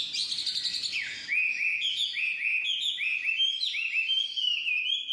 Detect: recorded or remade recorded